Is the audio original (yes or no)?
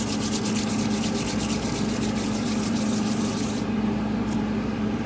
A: yes